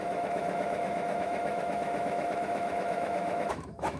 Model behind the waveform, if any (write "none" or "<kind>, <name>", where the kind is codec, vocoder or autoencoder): autoencoder, DAC-VAE